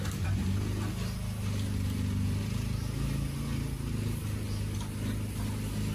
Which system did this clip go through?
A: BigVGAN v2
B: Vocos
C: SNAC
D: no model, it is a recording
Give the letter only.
D